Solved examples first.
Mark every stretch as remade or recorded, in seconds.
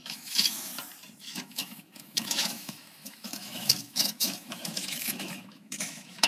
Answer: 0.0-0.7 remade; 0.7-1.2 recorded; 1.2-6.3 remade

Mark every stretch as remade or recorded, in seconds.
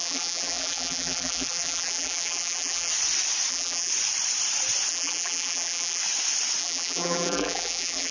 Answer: 0.0-2.9 remade; 2.9-3.5 recorded; 3.5-3.9 remade; 3.9-4.9 recorded; 4.9-6.0 remade; 6.0-6.6 recorded; 6.6-8.1 remade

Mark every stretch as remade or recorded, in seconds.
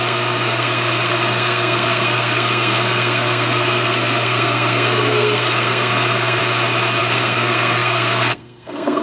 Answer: 0.0-6.4 remade; 6.4-7.0 recorded; 7.0-9.0 remade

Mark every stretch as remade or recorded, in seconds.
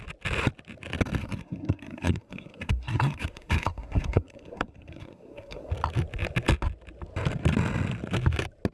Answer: 0.0-1.2 recorded; 1.2-5.7 remade; 5.7-8.7 recorded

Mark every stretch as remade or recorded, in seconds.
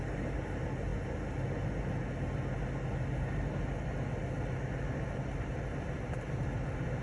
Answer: 0.0-7.0 recorded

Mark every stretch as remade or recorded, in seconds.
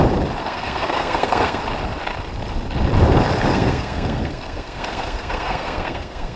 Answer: 0.0-0.4 recorded; 0.4-1.6 remade; 1.6-3.5 recorded; 3.5-6.4 remade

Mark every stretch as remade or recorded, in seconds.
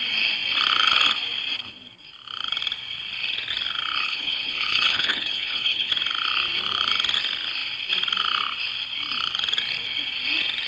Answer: 0.0-4.0 recorded; 4.0-5.9 remade; 5.9-10.7 recorded